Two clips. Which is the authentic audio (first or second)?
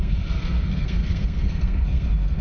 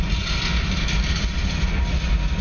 second